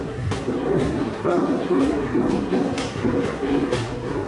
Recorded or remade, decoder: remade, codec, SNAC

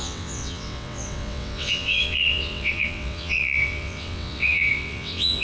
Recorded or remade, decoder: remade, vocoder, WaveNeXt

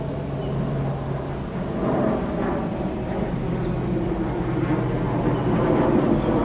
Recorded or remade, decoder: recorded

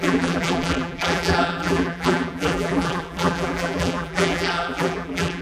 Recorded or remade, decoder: remade, vocoder, BigVGAN v2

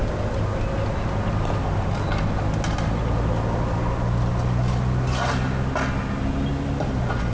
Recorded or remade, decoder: recorded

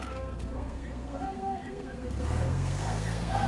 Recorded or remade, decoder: remade, codec, SNAC